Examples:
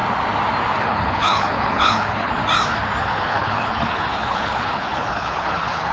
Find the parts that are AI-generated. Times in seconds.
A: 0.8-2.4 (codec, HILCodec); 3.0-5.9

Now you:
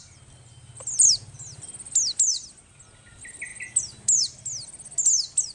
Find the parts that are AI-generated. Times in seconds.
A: none

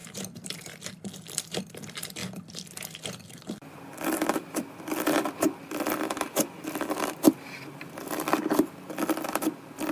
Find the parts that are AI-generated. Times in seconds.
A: 0.0-1.6 (vocoder, BigVGAN v2)

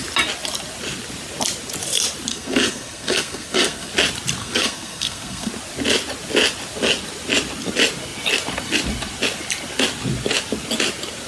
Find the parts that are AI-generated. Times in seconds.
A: 2.3-3.9 (codec, SNAC); 4.4-5.5

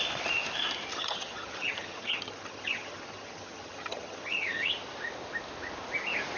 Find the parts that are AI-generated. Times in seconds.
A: 0.9-4.7 (vocoder, HiFi-GAN)

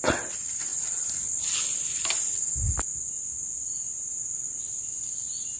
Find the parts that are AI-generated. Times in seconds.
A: none

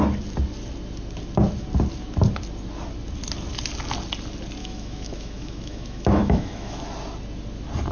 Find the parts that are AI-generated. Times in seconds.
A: 4.6-6.8 (autoencoder, DAC-VAE)

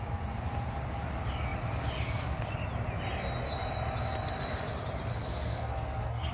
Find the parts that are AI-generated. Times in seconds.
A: 5.1-6.3 (codec, SNAC)